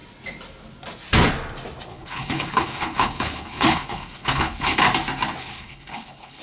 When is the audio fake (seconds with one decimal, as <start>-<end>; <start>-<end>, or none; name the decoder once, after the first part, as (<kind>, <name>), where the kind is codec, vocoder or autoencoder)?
1.9-4.8 (codec, HILCodec); 5.4-6.4